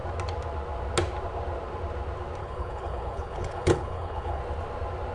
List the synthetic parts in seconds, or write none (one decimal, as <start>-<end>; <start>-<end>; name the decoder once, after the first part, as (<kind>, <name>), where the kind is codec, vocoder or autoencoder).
2.4-4.4 (codec, HILCodec)